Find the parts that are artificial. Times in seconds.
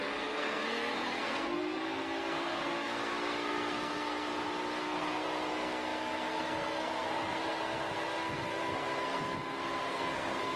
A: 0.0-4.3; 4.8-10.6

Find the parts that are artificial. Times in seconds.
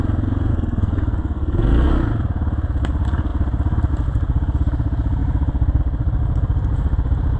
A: 0.5-1.9